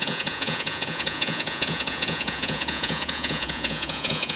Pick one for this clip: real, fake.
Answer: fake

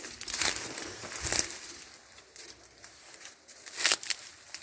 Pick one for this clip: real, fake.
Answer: real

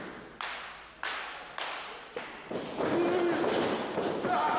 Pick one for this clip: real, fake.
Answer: real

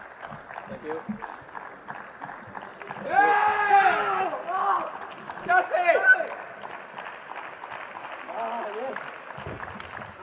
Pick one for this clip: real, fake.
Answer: real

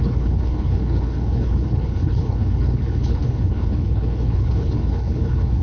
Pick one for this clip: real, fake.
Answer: fake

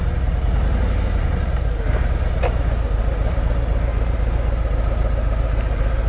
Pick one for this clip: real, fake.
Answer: real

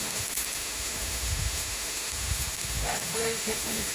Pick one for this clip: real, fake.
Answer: fake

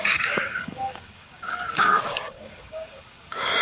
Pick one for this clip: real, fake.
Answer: fake